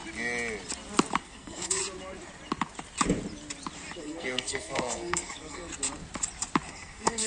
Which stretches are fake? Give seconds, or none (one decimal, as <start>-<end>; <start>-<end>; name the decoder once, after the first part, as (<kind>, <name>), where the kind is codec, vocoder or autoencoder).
1.2-1.8 (codec, SNAC); 4.0-5.7; 6.7-7.3